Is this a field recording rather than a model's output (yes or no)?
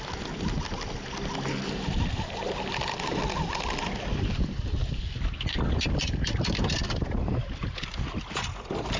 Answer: yes